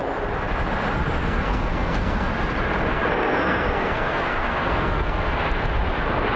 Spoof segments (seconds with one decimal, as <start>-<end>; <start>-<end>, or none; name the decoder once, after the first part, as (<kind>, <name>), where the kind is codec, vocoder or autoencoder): 1.2-2.3 (codec, SNAC); 2.9-5.7